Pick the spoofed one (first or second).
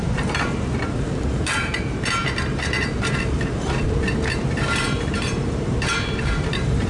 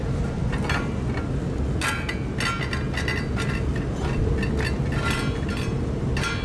first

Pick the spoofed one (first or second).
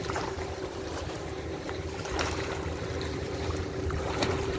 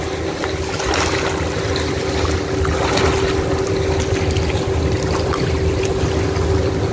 first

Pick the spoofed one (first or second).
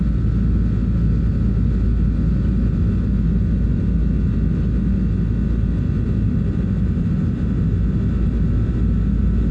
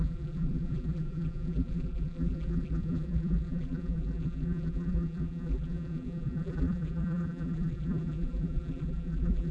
second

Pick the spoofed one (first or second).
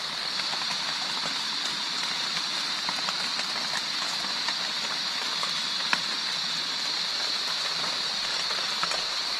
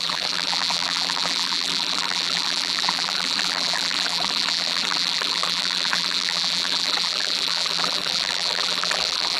second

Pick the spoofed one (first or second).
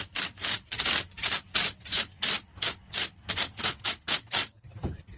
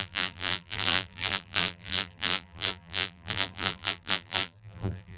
second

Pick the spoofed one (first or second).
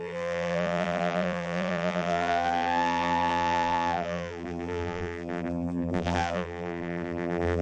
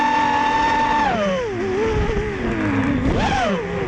first